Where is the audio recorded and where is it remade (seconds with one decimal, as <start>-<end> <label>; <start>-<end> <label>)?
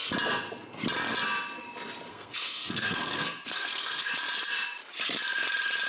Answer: 0.0-2.1 recorded; 2.1-4.1 remade; 4.1-5.9 recorded